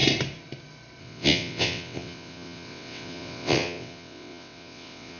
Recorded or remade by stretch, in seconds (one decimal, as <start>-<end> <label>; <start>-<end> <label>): 0.0-1.0 recorded; 1.0-5.2 remade